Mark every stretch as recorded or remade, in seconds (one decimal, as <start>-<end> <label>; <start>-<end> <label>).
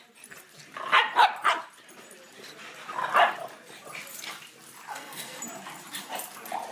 0.0-4.9 recorded; 4.9-5.4 remade; 5.4-6.7 recorded